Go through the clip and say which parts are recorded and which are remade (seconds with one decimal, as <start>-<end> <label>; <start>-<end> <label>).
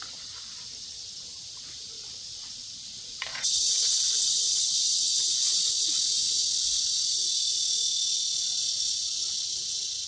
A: 0.0-3.3 recorded; 3.3-5.6 remade; 5.6-10.1 recorded